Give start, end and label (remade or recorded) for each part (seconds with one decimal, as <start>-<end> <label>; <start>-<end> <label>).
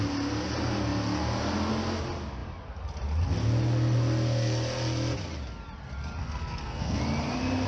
0.0-6.2 recorded; 6.2-7.0 remade; 7.0-7.7 recorded